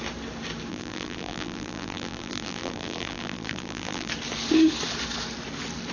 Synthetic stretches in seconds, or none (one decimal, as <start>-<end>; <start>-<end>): 0.7-4.1